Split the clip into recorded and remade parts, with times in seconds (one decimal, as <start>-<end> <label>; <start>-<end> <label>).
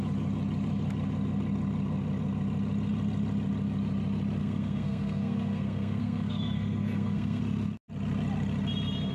0.0-4.4 recorded; 4.4-7.4 remade; 7.4-9.1 recorded